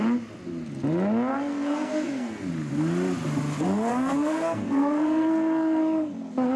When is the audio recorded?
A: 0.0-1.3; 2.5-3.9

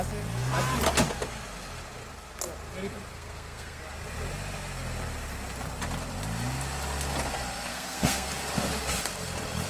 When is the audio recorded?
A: 0.0-3.1; 3.8-7.7; 8.3-9.7

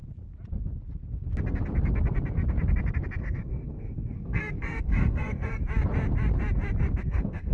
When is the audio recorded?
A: 0.0-3.2; 5.6-7.0

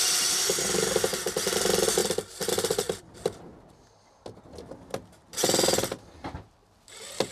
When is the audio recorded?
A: 0.0-7.3

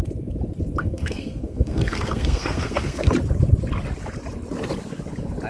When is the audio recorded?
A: 0.0-0.8; 3.1-5.5

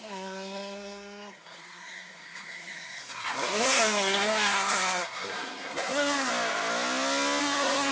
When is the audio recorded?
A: 6.3-7.4

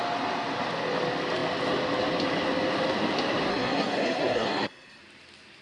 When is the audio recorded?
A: 0.0-3.5; 5.0-5.6

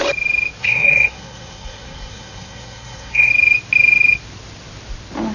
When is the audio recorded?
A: 0.0-0.6; 3.3-5.3